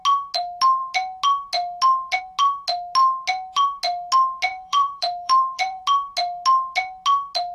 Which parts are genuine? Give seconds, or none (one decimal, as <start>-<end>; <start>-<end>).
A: 0.0-4.5; 5.8-7.5